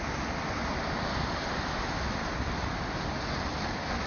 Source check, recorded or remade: recorded